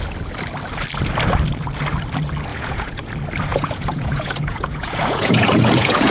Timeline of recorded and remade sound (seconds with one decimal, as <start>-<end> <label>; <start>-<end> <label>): 0.0-2.5 recorded; 2.5-3.1 remade; 3.1-3.5 recorded; 3.5-6.1 remade